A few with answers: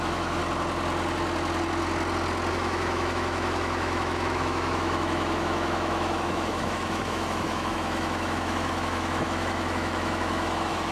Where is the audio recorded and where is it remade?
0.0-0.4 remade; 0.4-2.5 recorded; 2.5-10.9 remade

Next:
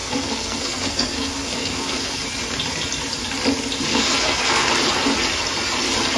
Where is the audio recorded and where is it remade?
0.0-2.2 remade; 2.2-3.9 recorded; 3.9-4.7 remade; 4.7-6.2 recorded

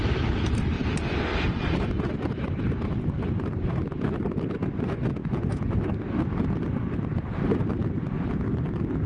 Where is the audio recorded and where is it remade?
0.0-1.3 recorded; 1.3-4.4 remade; 4.4-9.1 recorded

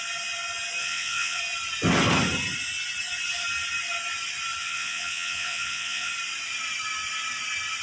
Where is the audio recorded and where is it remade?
0.0-0.8 recorded; 0.8-1.4 remade; 1.4-4.6 recorded; 4.6-6.1 remade; 6.1-7.8 recorded

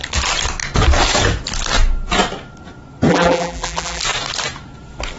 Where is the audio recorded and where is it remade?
0.0-3.1 recorded; 3.1-4.0 remade; 4.0-5.2 recorded